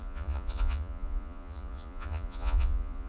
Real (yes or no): no